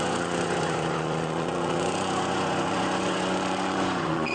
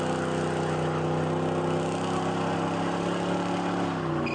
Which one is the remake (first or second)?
first